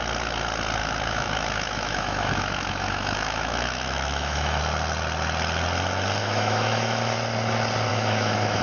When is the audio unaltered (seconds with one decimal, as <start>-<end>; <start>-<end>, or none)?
0.0-0.8; 4.6-6.2; 7.0-7.9